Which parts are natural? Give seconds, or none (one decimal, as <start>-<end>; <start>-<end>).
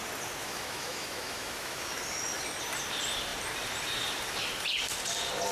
0.0-0.4; 2.0-5.5